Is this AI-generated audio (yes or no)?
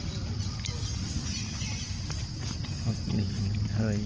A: no